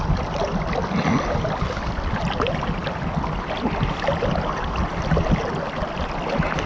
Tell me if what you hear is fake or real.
real